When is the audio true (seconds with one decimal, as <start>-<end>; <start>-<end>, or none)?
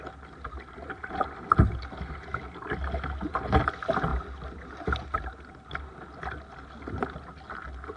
0.0-8.0